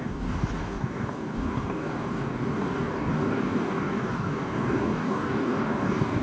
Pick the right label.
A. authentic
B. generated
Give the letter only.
B